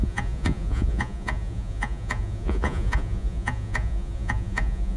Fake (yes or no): yes